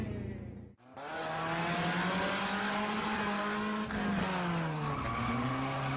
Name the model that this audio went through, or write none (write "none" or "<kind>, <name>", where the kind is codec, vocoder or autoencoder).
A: none